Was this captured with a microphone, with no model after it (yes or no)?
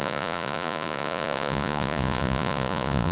no